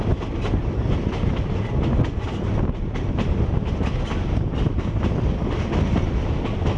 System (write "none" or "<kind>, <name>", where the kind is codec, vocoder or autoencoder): none